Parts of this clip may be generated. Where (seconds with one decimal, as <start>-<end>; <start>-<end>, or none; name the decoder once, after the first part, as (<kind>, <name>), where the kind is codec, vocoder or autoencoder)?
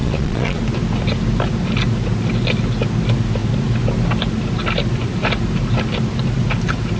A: 0.0-0.6 (vocoder, Vocos)